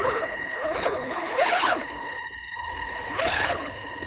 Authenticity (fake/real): fake